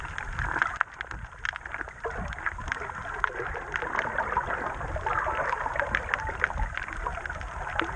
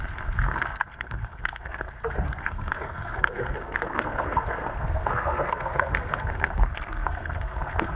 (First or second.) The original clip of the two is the first